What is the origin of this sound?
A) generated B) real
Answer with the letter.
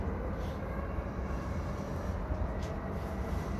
B